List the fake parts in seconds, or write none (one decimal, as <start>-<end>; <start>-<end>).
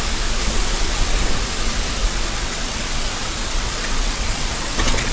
0.4-1.1; 2.0-5.1